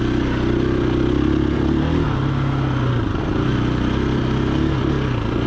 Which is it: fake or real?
real